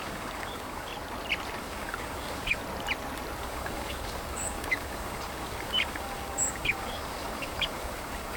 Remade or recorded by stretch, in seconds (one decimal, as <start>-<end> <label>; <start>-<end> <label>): 0.0-0.9 remade; 0.9-1.6 recorded; 1.6-2.6 remade; 2.6-3.4 recorded; 3.4-8.4 remade